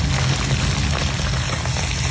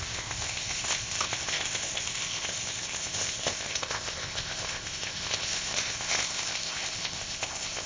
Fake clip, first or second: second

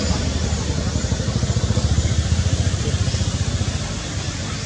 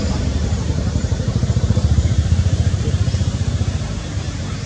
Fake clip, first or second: second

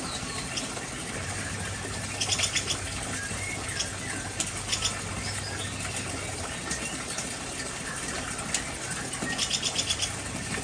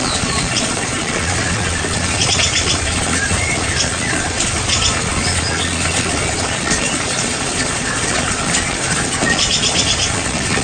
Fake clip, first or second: second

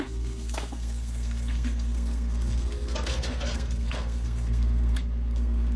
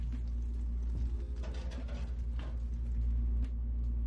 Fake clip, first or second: first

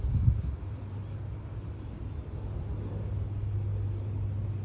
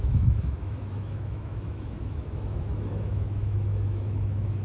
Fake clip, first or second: second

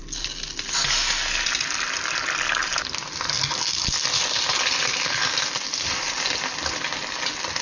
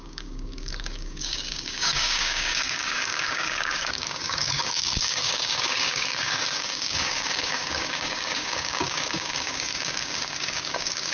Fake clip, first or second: second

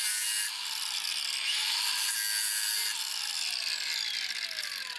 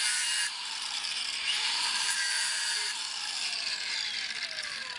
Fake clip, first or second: second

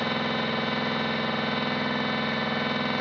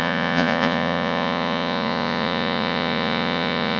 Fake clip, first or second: second